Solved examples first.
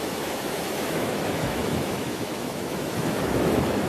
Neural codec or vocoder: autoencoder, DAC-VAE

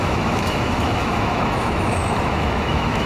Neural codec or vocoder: autoencoder, DAC-VAE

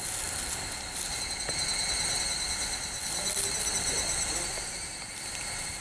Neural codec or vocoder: none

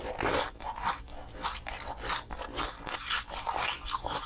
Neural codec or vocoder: none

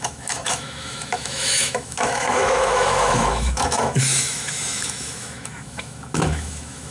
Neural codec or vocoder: autoencoder, DAC-VAE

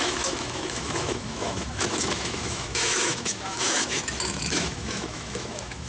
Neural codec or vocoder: autoencoder, DAC-VAE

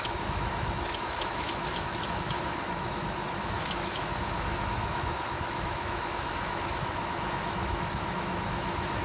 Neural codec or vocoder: autoencoder, DAC-VAE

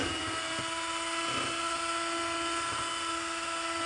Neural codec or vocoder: none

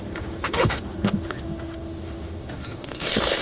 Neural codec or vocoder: autoencoder, DAC-VAE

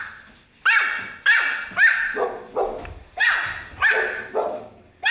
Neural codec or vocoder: none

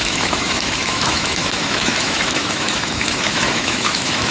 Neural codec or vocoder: autoencoder, DAC-VAE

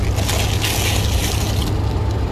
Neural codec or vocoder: none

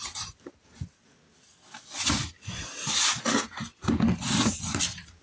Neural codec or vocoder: none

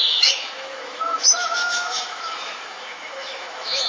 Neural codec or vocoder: autoencoder, DAC-VAE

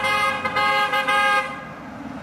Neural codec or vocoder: none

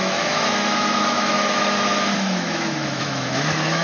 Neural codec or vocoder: autoencoder, DAC-VAE